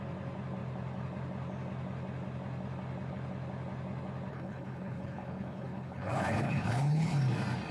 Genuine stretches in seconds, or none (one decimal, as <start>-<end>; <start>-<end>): 0.0-4.3; 7.2-7.7